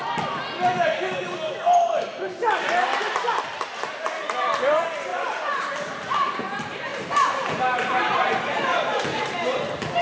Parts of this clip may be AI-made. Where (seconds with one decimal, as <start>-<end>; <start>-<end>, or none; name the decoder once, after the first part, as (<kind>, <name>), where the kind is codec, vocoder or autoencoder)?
5.1-6.3 (vocoder, BigVGAN v2); 6.9-9.0